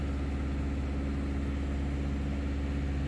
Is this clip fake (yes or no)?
no